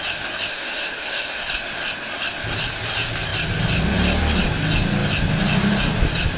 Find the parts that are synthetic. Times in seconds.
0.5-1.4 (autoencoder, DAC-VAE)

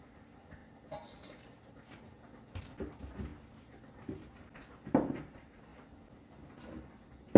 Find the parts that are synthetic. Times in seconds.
0.0-0.6 (vocoder, BigVGAN v2); 2.6-3.3; 4.3-5.7; 6.9-7.4